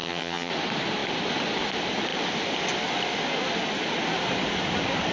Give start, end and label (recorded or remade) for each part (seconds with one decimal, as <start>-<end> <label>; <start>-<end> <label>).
0.0-0.5 remade; 0.5-5.1 recorded